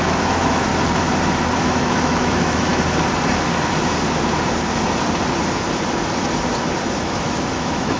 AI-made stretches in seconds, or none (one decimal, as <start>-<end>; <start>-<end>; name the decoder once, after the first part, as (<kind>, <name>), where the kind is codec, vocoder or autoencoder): 0.0-0.7 (autoencoder, DAC-VAE); 1.6-2.7; 7.0-8.0